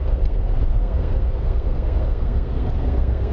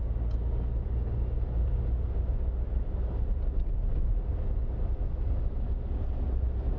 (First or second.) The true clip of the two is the second